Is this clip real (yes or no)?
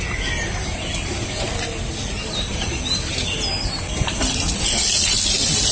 yes